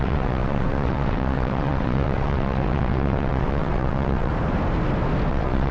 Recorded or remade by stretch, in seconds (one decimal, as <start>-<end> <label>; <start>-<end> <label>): 0.0-4.3 remade; 4.3-5.3 recorded; 5.3-5.7 remade